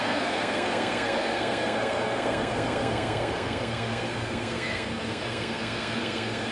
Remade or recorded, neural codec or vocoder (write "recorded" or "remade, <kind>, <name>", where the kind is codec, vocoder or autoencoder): remade, codec, SNAC